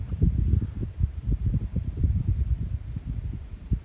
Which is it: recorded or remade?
recorded